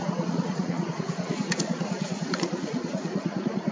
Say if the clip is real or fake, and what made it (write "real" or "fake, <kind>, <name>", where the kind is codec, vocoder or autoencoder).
fake, vocoder, Vocos